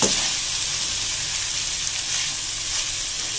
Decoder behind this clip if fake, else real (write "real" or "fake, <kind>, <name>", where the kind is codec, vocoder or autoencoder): real